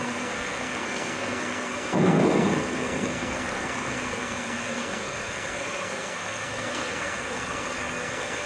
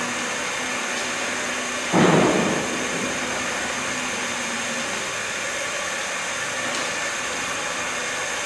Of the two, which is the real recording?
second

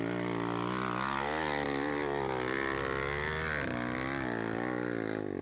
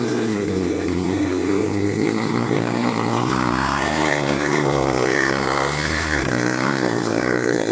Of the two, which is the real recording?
first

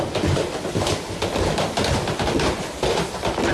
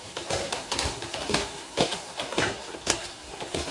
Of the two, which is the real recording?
first